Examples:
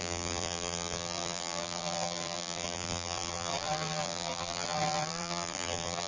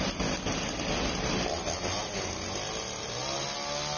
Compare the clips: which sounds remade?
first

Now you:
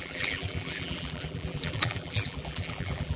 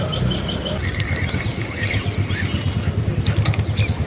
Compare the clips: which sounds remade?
first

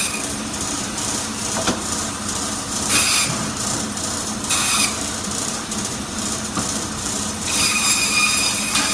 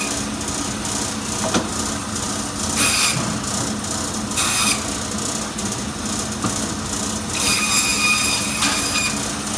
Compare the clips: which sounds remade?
first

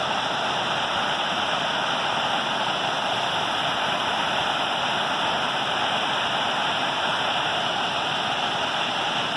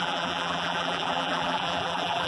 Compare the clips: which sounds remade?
second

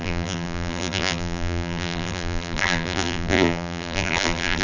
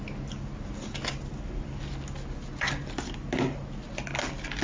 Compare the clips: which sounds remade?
first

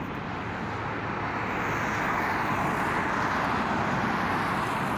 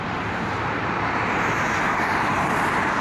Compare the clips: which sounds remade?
second